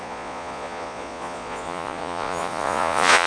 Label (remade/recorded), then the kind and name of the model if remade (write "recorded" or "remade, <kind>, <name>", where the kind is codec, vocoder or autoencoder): remade, vocoder, Vocos